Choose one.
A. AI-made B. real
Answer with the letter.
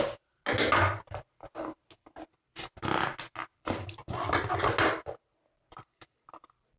B